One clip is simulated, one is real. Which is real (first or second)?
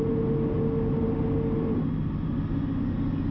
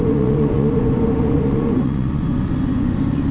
first